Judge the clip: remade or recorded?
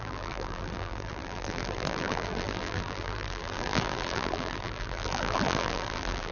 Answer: remade